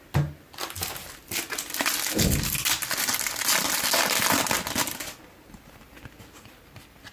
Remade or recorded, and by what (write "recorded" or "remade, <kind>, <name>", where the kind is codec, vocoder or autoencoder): recorded